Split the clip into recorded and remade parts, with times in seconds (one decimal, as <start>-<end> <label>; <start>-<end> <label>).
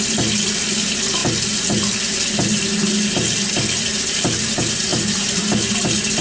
0.0-6.2 recorded